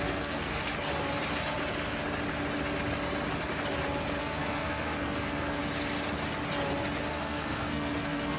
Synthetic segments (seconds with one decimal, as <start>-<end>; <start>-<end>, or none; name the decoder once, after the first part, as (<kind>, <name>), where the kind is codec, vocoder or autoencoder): 0.0-0.6 (codec, SNAC); 4.2-5.6; 7.1-8.4